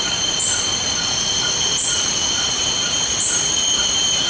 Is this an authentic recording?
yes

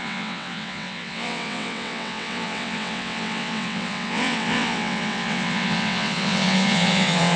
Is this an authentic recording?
no